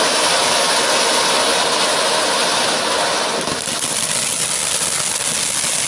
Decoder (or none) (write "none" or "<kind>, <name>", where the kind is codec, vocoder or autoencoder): none